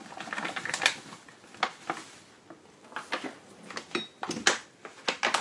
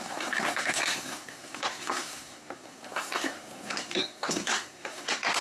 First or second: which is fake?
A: second